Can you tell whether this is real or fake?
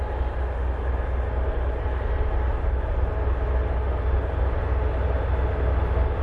real